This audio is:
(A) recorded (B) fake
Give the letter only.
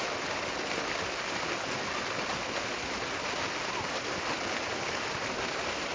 A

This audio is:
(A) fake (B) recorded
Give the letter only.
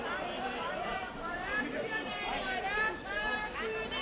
A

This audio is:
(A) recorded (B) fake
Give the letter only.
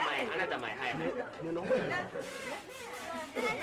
A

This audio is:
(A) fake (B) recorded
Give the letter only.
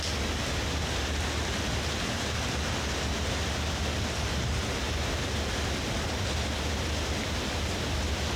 B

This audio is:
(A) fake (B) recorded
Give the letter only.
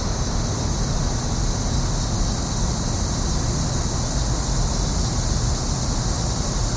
B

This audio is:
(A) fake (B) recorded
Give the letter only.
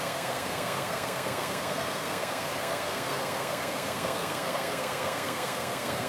A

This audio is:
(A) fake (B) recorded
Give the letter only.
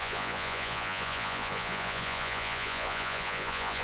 A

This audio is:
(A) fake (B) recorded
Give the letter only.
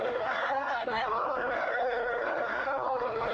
A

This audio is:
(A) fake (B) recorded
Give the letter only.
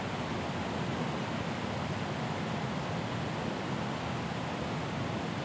B